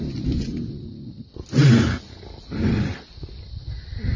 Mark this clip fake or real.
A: real